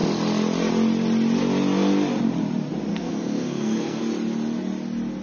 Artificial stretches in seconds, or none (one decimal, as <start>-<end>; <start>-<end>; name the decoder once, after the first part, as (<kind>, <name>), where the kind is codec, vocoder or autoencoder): 2.9-4.0 (codec, SNAC)